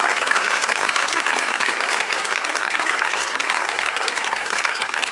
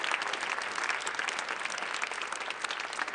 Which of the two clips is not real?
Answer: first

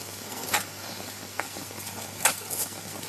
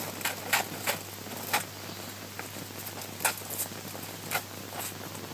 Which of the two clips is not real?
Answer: first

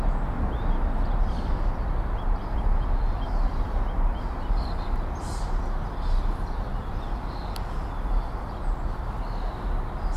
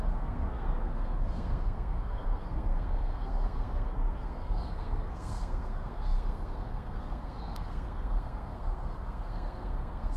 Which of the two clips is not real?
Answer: second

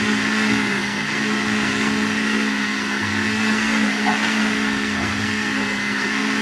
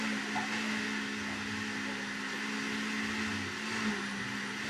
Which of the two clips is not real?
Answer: first